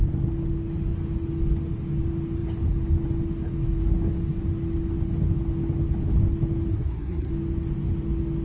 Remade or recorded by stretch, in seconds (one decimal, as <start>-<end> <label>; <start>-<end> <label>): 0.0-6.7 recorded; 6.7-7.3 remade; 7.3-8.4 recorded